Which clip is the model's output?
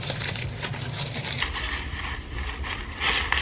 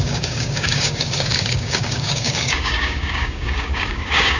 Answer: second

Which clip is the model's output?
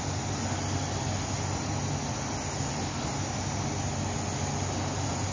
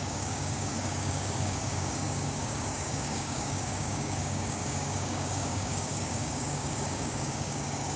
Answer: second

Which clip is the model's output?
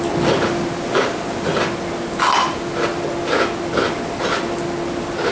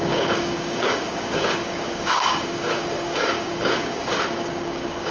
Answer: second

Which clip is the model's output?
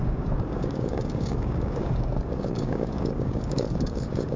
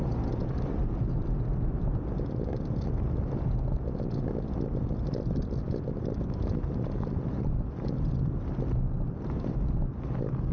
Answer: first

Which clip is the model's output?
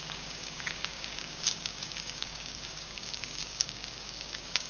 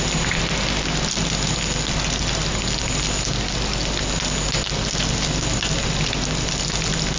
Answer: first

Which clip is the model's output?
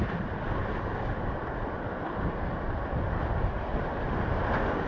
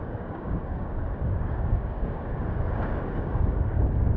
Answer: second